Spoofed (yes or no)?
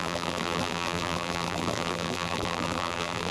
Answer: yes